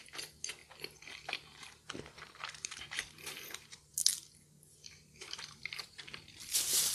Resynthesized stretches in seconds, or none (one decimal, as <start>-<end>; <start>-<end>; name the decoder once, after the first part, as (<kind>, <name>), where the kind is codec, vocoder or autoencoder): 0.0-0.6 (vocoder, BigVGAN v2); 1.3-4.0; 4.9-6.9